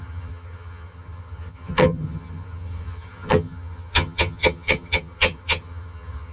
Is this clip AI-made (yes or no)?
yes